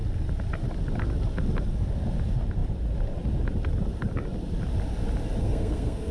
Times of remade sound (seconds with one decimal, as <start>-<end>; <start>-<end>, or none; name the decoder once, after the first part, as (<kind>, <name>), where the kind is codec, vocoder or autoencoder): 5.4-6.1 (codec, SNAC)